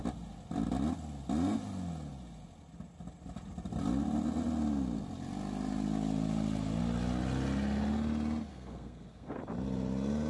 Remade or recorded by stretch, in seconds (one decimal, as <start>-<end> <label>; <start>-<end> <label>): 0.0-8.5 recorded; 8.5-9.4 remade; 9.4-10.3 recorded